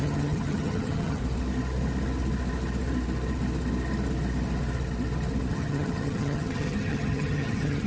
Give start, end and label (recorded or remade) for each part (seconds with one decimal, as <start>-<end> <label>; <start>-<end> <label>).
0.0-1.2 remade; 1.2-5.5 recorded; 5.5-7.9 remade